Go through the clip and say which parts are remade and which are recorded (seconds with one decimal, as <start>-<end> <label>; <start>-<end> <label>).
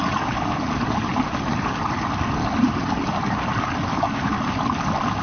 0.0-5.2 recorded